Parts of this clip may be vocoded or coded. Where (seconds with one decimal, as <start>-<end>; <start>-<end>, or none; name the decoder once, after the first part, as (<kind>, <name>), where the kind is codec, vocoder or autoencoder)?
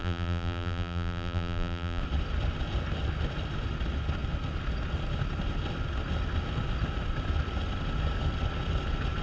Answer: 0.0-2.0 (vocoder, BigVGAN v2)